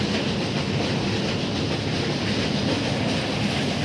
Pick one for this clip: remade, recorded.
recorded